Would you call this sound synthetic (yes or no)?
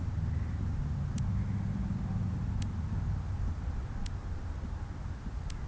no